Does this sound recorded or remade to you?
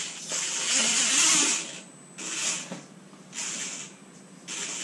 recorded